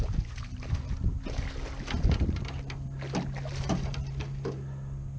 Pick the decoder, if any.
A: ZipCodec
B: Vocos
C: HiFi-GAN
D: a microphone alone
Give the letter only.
D